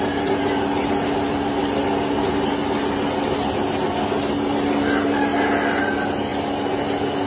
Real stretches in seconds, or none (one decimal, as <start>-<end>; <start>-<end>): 0.0-7.3